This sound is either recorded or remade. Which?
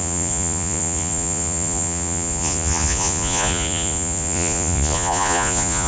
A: remade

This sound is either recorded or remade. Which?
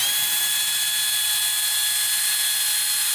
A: recorded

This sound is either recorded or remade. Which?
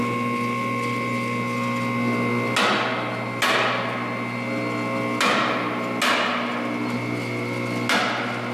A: recorded